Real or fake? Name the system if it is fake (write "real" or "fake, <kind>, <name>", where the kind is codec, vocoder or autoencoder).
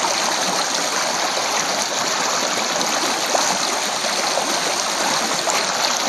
real